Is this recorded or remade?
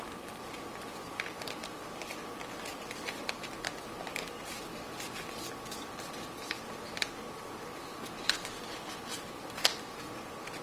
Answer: remade